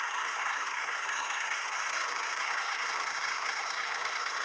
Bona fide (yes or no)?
no